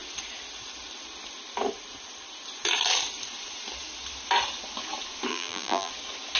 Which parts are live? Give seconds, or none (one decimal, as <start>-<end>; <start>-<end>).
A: 0.0-5.3; 5.9-6.4